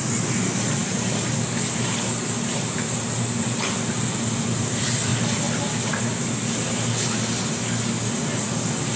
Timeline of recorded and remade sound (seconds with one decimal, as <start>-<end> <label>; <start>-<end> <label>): 0.0-0.8 recorded; 0.8-1.3 remade; 1.3-9.0 recorded